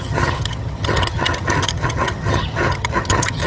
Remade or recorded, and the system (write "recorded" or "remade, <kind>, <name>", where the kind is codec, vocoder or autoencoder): remade, vocoder, HiFi-GAN